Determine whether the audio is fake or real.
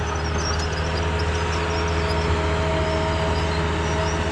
real